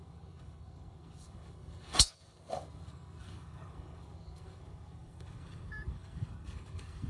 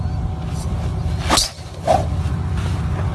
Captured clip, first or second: second